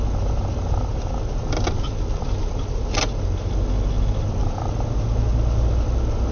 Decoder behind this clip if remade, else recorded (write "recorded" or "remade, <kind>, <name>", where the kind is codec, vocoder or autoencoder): recorded